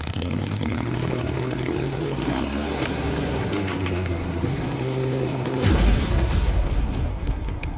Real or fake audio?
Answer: fake